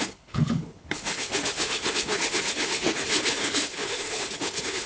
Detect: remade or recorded remade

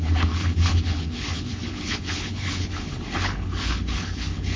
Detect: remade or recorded remade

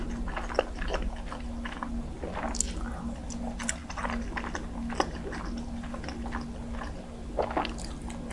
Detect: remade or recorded recorded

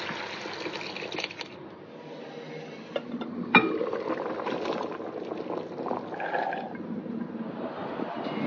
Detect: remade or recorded recorded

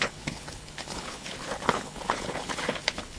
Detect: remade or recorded remade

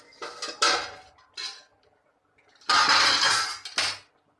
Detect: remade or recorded recorded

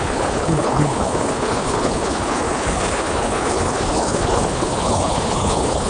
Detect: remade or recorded remade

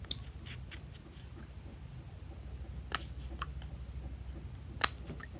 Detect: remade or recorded recorded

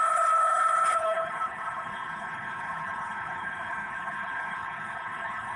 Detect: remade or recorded remade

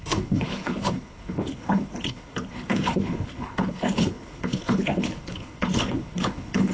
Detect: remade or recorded remade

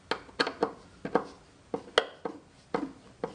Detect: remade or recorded recorded